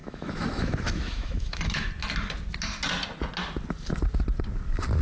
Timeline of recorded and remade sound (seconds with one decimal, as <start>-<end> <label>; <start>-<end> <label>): 0.0-1.9 remade; 1.9-5.0 recorded